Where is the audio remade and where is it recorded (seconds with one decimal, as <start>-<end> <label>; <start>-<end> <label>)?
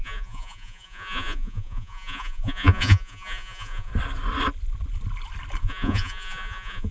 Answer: 0.0-3.9 remade; 3.9-5.6 recorded; 5.6-6.9 remade